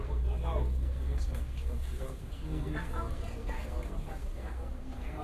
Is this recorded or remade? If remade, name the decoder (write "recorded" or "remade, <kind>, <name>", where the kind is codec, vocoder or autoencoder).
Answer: remade, codec, SNAC